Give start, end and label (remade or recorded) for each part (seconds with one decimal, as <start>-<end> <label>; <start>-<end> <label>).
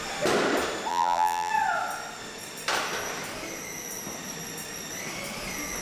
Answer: 0.0-0.9 recorded; 0.9-1.5 remade; 1.5-5.8 recorded